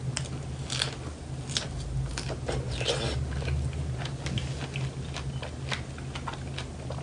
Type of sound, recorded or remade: recorded